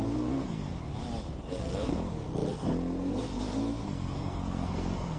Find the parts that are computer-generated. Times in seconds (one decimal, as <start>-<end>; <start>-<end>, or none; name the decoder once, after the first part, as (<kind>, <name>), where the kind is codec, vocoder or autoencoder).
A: 0.0-0.7 (codec, SNAC); 1.5-5.2